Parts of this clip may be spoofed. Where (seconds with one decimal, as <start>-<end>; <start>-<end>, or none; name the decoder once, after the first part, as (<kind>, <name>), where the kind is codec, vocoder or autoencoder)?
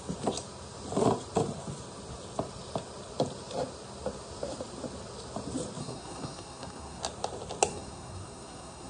5.8-7.0 (codec, SNAC); 7.7-8.9